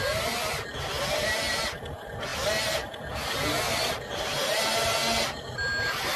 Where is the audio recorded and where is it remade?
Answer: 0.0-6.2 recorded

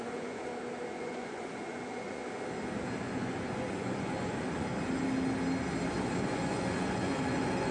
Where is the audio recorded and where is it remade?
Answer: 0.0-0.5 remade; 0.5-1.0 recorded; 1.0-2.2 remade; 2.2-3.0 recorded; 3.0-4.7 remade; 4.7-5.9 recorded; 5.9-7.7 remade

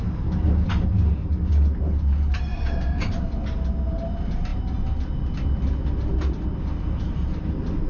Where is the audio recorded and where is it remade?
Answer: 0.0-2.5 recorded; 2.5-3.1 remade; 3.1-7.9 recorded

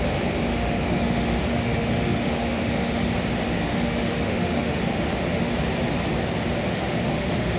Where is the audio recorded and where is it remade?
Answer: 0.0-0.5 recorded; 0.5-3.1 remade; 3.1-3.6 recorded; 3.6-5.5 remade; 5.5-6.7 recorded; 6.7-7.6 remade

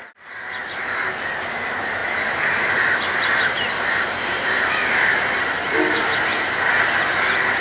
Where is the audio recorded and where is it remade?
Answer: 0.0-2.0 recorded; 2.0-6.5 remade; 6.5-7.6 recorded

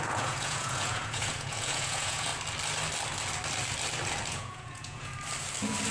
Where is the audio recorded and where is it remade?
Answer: 0.0-2.3 remade; 2.3-4.3 recorded; 4.3-5.1 remade; 5.1-5.9 recorded